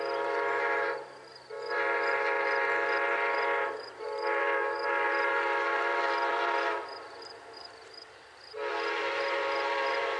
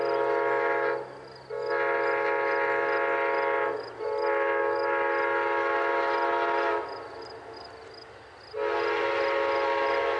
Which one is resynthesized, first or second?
first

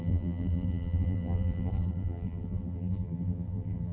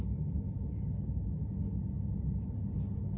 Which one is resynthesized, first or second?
first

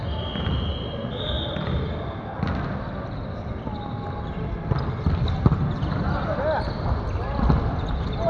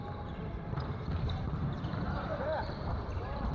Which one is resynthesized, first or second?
second